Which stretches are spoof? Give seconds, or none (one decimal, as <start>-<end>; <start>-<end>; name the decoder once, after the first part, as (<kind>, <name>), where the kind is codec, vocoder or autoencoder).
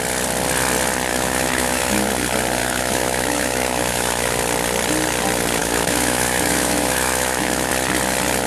1.1-2.1 (autoencoder, DAC-VAE); 2.6-4.3; 5.6-7.7